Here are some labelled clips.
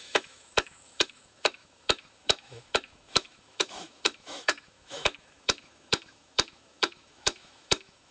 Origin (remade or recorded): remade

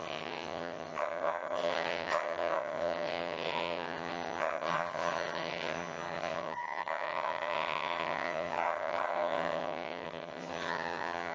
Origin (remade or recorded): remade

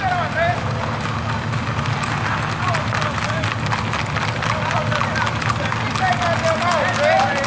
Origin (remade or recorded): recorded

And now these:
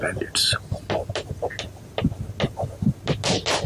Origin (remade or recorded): recorded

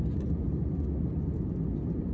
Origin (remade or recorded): recorded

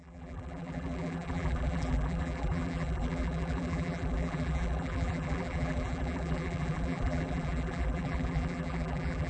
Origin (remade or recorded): remade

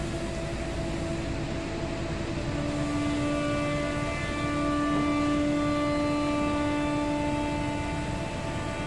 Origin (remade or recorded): recorded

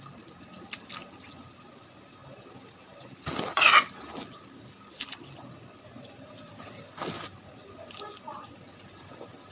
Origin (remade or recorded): recorded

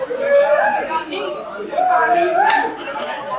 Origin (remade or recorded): recorded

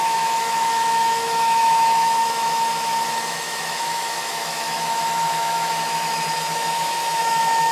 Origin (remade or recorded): remade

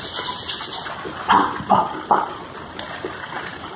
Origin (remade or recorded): recorded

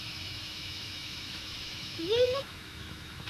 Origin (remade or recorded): remade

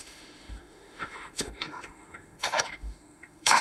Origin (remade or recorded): remade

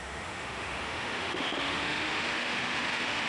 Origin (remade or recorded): remade